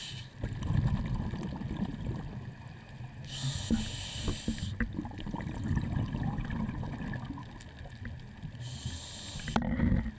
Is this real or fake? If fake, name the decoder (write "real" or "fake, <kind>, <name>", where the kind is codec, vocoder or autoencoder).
real